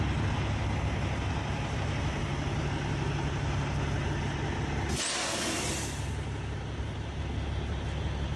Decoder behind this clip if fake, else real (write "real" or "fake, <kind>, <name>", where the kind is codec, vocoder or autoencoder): real